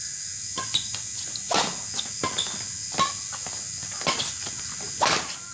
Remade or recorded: recorded